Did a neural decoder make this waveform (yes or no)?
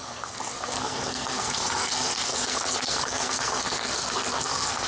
yes